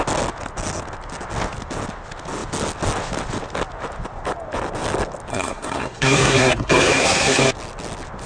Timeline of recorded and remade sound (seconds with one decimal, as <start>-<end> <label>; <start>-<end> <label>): 0.0-5.3 recorded; 5.3-7.4 remade; 7.4-8.3 recorded